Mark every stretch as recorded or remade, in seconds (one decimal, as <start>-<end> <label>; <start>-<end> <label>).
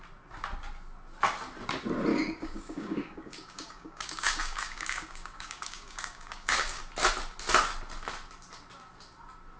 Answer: 0.0-2.1 recorded; 2.1-6.8 remade; 6.8-9.6 recorded